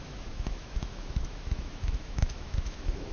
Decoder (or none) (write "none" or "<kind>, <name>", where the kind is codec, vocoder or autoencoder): autoencoder, DAC-VAE